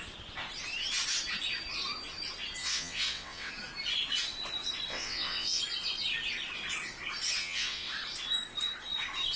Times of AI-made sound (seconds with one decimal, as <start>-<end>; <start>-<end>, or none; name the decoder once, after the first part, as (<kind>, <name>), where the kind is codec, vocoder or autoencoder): 2.6-3.5 (vocoder, WaveNeXt); 4.9-5.6; 7.4-7.9